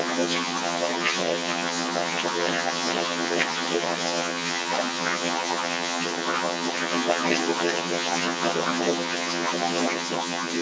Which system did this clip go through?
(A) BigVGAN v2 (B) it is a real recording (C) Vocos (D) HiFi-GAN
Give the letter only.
D